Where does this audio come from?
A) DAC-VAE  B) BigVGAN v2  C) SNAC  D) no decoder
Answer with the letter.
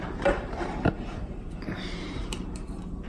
B